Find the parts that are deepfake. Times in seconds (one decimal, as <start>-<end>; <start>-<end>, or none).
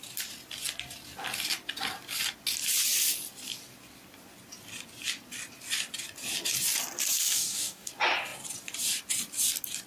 7.2-7.9